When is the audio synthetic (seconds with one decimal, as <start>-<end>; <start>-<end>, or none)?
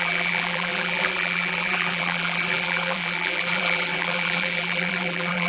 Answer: 0.0-5.5